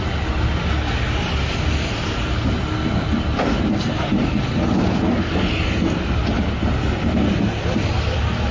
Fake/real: real